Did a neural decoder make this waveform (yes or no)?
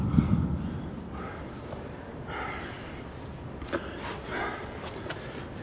no